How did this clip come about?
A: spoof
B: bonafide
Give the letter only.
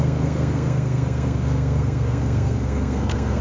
A